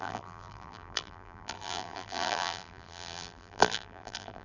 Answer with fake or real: fake